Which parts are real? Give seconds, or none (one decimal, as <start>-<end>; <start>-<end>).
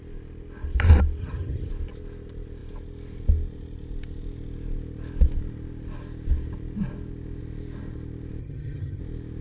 0.0-1.2; 1.7-8.4; 9.0-9.4